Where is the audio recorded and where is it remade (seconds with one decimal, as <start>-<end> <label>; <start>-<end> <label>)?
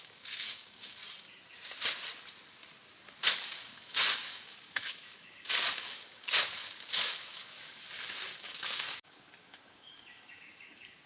0.0-1.0 remade; 1.0-3.3 recorded; 3.3-11.1 remade